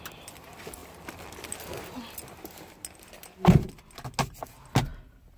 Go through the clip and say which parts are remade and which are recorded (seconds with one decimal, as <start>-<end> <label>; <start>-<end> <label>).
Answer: 0.0-5.4 recorded

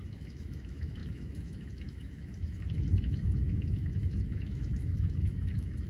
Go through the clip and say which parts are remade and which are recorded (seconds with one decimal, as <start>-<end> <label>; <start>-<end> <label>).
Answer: 0.0-5.9 remade

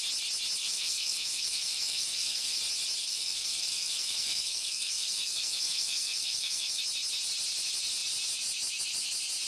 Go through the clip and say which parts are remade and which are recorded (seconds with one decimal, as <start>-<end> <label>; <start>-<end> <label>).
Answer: 0.0-0.6 recorded; 0.6-2.6 remade; 2.6-3.0 recorded; 3.0-6.8 remade; 6.8-9.5 recorded

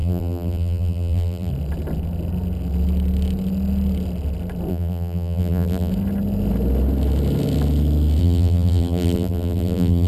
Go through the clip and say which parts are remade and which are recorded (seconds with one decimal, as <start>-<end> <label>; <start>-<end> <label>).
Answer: 0.0-1.5 remade; 1.5-4.7 recorded; 4.7-5.9 remade; 5.9-8.2 recorded; 8.2-10.1 remade